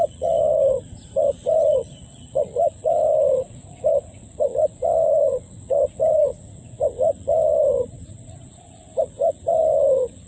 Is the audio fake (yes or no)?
yes